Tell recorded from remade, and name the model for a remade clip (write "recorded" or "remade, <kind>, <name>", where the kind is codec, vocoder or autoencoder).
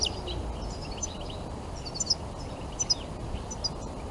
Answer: recorded